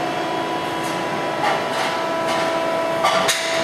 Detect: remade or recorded recorded